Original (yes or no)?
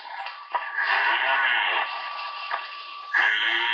yes